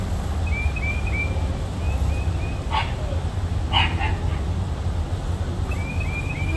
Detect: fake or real real